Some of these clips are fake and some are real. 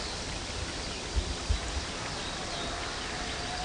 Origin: real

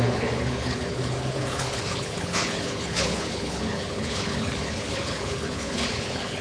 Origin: fake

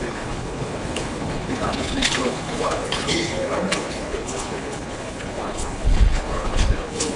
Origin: fake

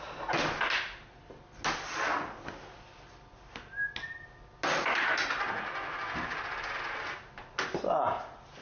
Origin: real